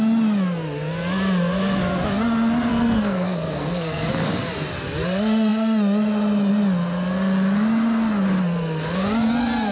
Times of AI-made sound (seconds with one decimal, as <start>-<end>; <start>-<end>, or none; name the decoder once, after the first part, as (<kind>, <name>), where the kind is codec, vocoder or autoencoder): 2.7-4.1 (codec, SNAC)